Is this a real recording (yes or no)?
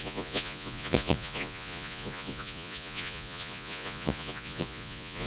no